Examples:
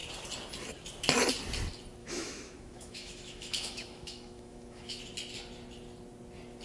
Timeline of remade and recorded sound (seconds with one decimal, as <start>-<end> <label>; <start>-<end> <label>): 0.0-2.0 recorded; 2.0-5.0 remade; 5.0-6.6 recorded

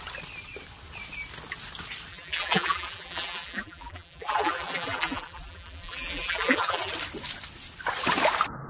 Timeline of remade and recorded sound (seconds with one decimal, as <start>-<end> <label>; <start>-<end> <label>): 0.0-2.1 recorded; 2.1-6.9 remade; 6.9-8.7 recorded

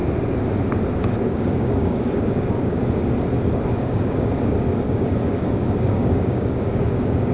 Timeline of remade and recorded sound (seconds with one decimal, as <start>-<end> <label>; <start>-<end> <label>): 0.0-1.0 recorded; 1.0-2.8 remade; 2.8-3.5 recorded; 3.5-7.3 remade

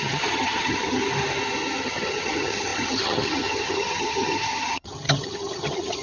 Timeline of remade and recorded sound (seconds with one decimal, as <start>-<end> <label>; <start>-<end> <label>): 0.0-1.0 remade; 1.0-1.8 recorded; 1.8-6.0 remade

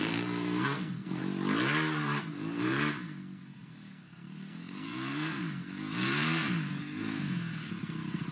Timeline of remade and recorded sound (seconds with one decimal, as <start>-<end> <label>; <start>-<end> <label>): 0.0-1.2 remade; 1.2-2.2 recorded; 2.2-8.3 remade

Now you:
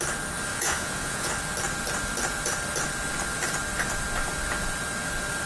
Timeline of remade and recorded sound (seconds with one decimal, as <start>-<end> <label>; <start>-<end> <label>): 0.0-0.5 recorded; 0.5-1.3 remade; 1.3-5.5 recorded

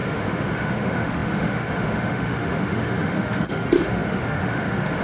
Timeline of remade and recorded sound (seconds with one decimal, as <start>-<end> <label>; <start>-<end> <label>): 0.0-5.0 remade

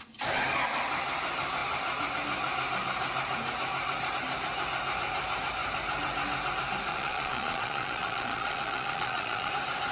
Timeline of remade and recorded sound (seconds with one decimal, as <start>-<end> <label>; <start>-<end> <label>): 0.0-6.9 recorded; 6.9-9.5 remade; 9.5-9.9 recorded